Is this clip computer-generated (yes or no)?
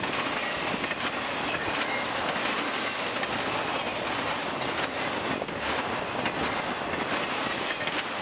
no